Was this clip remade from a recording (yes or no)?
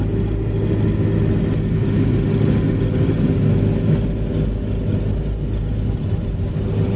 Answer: no